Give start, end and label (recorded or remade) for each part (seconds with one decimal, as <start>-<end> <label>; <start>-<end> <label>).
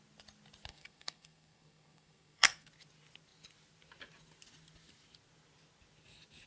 0.0-0.7 recorded; 0.7-2.7 remade; 2.7-6.5 recorded